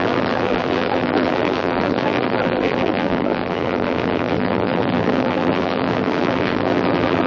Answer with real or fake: fake